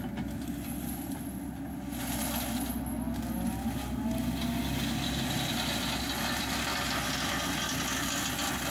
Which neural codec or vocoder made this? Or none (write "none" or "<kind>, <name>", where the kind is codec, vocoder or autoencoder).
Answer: none